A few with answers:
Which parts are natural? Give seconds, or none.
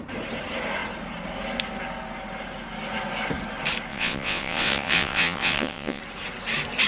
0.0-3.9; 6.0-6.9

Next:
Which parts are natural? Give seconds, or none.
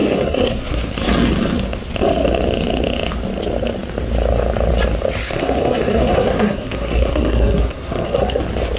0.9-5.2; 8.4-8.8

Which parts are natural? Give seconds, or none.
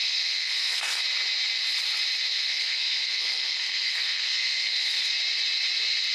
1.0-2.3; 5.1-6.1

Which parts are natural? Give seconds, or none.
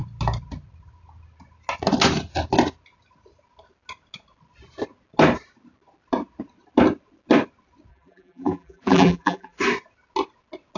0.0-7.9; 9.6-10.8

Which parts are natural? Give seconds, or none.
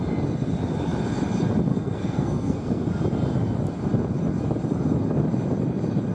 0.0-1.7; 2.9-6.1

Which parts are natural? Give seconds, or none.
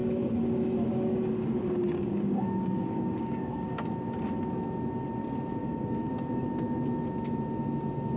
3.9-5.6; 6.1-8.2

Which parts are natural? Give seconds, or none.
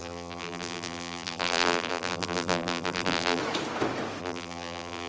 3.4-4.2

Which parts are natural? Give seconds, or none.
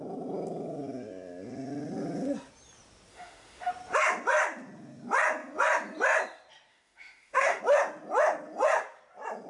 0.0-3.1; 3.7-6.7; 7.6-9.5